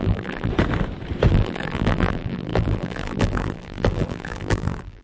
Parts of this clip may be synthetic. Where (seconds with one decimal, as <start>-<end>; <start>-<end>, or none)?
0.0-0.5; 1.3-5.0